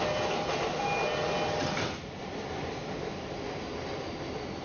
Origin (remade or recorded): recorded